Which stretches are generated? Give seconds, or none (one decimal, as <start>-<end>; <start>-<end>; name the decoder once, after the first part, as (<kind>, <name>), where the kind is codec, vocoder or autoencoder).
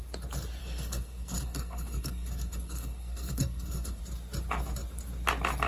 0.6-4.0 (codec, SNAC)